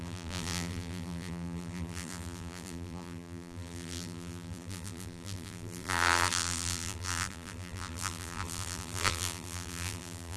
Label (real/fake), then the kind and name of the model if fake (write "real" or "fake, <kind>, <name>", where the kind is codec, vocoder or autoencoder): fake, vocoder, BigVGAN v2